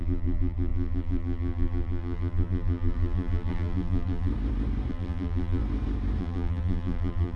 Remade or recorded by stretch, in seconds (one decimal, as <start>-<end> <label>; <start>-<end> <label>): 0.0-4.3 remade; 4.3-4.9 recorded; 4.9-5.6 remade; 5.6-6.2 recorded; 6.2-7.4 remade

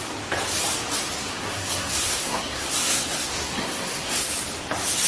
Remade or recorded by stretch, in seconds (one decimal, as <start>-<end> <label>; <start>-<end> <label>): 0.0-1.2 recorded; 1.2-4.3 remade; 4.3-5.1 recorded